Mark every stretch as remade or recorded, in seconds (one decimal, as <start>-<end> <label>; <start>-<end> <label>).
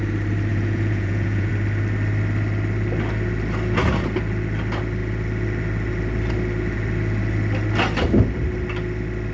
0.0-0.5 recorded; 0.5-1.5 remade; 1.5-9.3 recorded